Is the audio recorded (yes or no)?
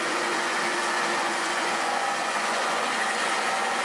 no